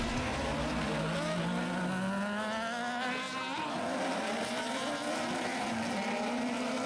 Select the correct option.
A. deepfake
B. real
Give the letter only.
B